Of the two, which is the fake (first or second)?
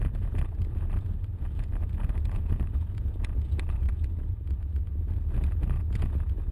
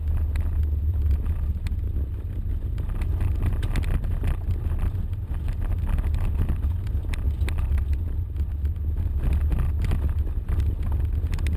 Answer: first